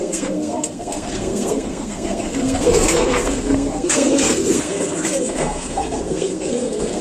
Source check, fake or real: fake